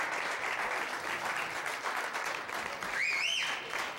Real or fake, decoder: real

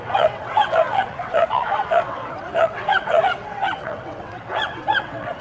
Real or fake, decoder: fake, vocoder, WaveNeXt